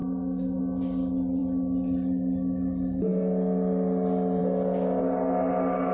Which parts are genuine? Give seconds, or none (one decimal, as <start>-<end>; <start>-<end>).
0.6-5.9